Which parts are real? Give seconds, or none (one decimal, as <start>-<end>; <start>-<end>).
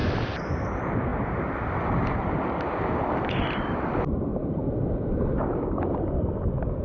0.0-6.8